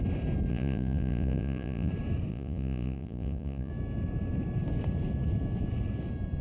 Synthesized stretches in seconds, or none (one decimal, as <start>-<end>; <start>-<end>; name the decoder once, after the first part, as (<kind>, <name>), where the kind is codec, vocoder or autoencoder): 0.5-1.9 (vocoder, Vocos); 2.3-3.7